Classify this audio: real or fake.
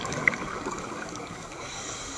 fake